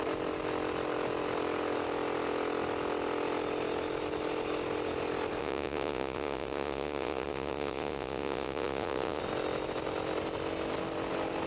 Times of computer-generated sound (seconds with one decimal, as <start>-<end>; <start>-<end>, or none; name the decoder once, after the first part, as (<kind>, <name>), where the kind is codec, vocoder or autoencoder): 5.4-9.2 (vocoder, Vocos)